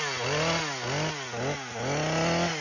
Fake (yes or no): no